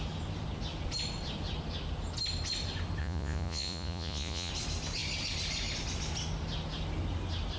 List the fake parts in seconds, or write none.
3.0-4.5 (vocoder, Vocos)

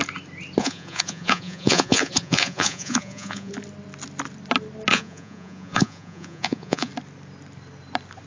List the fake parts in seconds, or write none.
0.6-3.5 (vocoder, Vocos); 4.9-6.9

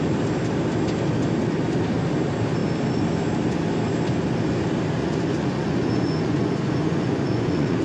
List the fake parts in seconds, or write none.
5.0-7.8 (vocoder, Vocos)

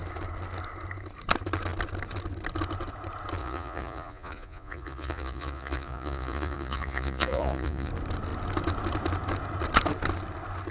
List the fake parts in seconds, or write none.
3.4-7.9 (vocoder, Vocos)

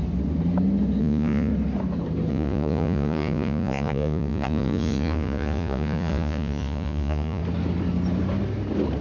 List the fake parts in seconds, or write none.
1.0-1.5 (vocoder, Vocos); 2.3-7.4

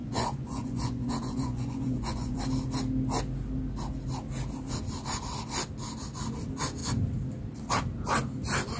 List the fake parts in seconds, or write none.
0.0-2.4 (vocoder, Vocos)